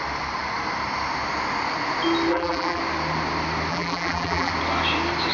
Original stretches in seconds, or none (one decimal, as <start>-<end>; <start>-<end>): 0.0-2.3; 2.8-3.7; 4.5-5.3